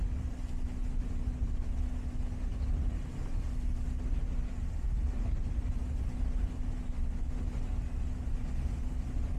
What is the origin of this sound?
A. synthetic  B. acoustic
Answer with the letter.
B